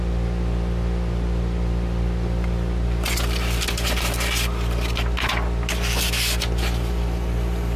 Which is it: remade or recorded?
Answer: recorded